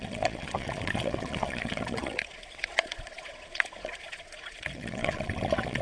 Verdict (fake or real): fake